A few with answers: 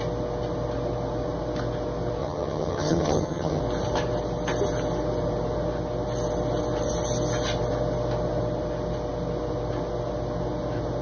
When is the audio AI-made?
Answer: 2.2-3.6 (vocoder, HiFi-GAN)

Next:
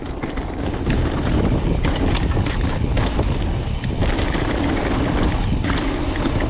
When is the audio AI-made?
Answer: 4.0-6.1 (vocoder, BigVGAN v2)

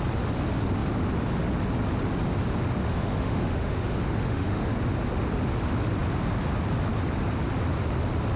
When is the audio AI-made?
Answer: 2.8-4.7 (autoencoder, DAC-VAE)

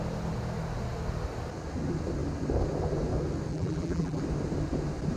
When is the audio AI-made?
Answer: 3.5-4.2 (vocoder, BigVGAN v2)

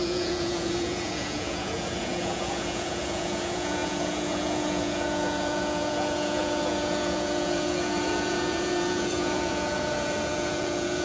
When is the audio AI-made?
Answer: 0.0-11.0 (vocoder, Vocos)

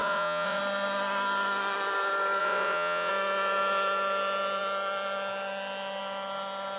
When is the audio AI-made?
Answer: 0.0-0.6 (vocoder, Vocos); 2.4-3.1

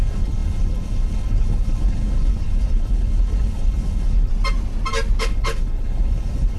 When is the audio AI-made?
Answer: 0.0-4.3 (codec, HILCodec); 5.2-6.6

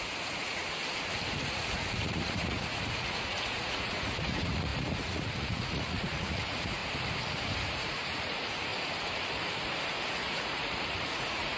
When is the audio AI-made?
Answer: 0.0-0.6 (vocoder, Vocos); 1.4-6.8; 7.7-8.7; 10.1-11.6